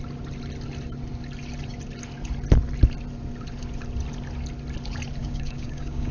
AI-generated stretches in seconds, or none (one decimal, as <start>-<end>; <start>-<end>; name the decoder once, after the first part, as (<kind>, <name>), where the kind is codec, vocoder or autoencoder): 5.2-6.1 (codec, DAC)